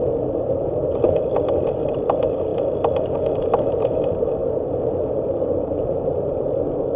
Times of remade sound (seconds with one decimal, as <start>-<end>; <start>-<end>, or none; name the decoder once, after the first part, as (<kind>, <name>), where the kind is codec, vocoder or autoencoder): 0.0-4.4 (vocoder, BigVGAN v2); 4.9-7.0